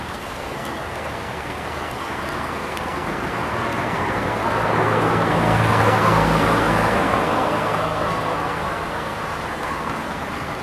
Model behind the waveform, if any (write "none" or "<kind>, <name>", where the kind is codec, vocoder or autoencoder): codec, SNAC